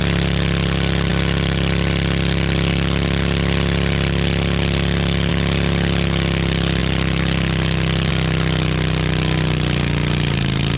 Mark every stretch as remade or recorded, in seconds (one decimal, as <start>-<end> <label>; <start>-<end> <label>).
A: 0.0-10.8 recorded